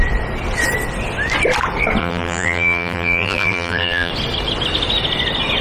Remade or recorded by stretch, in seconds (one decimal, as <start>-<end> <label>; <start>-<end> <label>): 0.0-2.0 recorded; 2.0-4.1 remade; 4.1-5.6 recorded

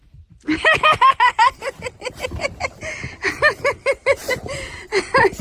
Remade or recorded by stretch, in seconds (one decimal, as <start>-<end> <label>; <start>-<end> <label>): 0.0-5.4 remade

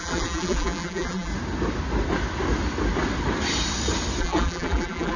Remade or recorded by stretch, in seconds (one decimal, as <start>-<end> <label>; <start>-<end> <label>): 0.0-1.3 remade; 1.3-4.2 recorded; 4.2-5.2 remade

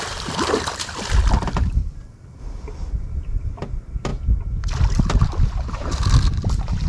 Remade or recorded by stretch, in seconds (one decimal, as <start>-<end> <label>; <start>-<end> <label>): 0.0-1.8 remade; 1.8-2.4 recorded; 2.4-4.1 remade; 4.1-5.1 recorded; 5.1-6.9 remade

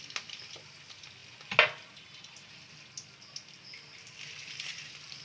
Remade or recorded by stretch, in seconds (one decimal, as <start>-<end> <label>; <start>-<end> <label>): 0.0-5.2 recorded

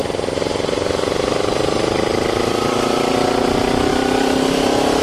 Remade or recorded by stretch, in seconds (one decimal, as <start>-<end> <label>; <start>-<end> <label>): 0.0-3.9 recorded; 3.9-5.0 remade

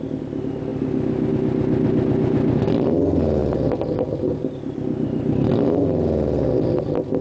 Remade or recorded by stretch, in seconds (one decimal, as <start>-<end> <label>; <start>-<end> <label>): 0.0-7.2 recorded

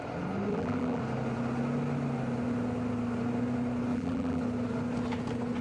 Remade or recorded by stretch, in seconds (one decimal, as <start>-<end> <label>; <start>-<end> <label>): 0.0-0.5 recorded; 0.5-1.0 remade; 1.0-3.9 recorded; 3.9-4.4 remade; 4.4-5.6 recorded